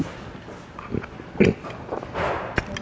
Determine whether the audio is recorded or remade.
recorded